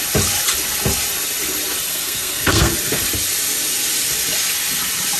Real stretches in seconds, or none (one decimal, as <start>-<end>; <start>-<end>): 0.0-1.9; 2.7-5.2